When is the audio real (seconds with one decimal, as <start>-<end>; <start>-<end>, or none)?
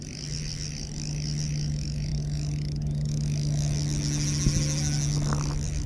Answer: 0.0-5.9